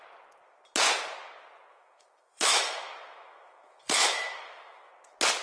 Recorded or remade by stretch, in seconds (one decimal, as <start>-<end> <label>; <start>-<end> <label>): 0.0-1.7 recorded; 1.7-4.9 remade; 4.9-5.4 recorded